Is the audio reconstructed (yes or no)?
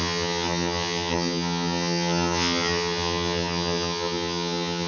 yes